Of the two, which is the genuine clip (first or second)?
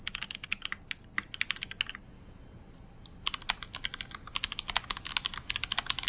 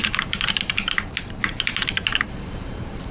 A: first